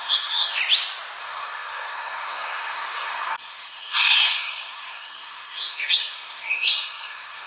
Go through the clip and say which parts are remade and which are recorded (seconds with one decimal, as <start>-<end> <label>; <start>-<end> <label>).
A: 0.0-0.6 remade; 0.6-1.2 recorded; 1.2-7.5 remade